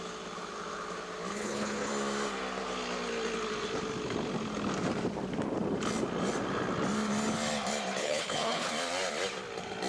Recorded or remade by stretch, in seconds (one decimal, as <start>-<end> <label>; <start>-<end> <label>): 0.0-1.3 recorded; 1.3-1.9 remade; 1.9-8.0 recorded; 8.0-8.7 remade; 8.7-9.9 recorded